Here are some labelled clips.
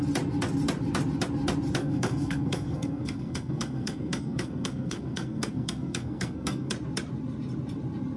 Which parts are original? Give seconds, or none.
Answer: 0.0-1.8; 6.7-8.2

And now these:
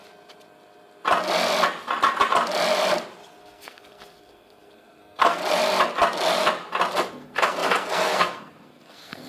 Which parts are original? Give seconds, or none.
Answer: 0.0-3.4; 5.4-7.1

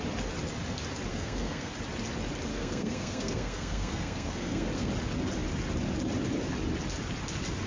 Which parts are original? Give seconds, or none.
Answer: 0.0-1.1; 1.7-2.5; 4.9-7.7

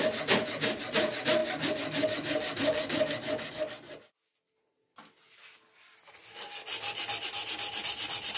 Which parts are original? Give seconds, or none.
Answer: 0.0-8.4

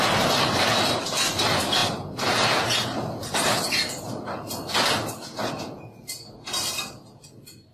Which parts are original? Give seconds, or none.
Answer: 0.0-7.7